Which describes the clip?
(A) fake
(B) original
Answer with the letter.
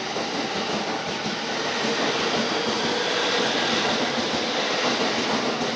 B